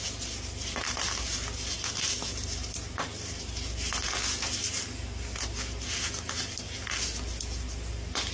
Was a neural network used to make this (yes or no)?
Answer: no